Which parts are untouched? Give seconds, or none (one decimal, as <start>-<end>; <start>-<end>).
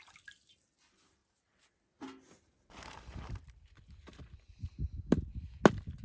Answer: 0.0-6.0